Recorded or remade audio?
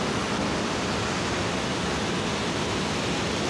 recorded